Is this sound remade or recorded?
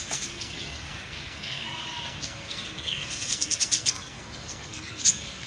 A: remade